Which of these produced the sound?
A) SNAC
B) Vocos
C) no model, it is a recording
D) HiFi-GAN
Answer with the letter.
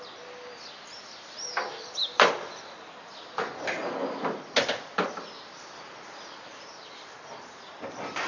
C